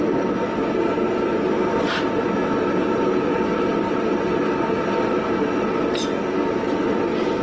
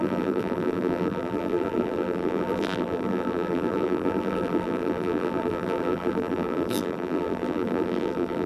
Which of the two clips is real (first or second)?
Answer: first